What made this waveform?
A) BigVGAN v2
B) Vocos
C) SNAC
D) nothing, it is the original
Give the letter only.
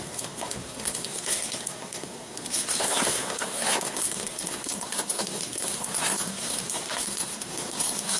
C